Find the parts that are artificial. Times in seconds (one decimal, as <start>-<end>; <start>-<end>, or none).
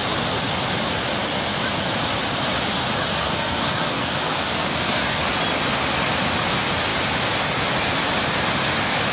3.2-5.2